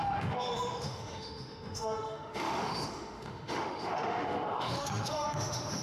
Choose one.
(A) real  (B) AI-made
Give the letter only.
B